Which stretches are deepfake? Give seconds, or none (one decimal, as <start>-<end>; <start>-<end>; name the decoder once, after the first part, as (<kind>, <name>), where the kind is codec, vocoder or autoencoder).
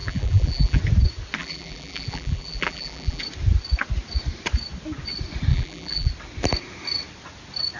0.0-0.8 (vocoder, BigVGAN v2); 1.4-3.2; 5.5-6.1